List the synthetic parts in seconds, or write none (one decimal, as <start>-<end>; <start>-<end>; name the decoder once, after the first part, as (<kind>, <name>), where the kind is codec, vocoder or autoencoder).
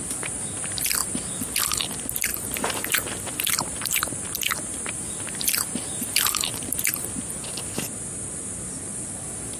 2.3-7.1 (vocoder, BigVGAN v2)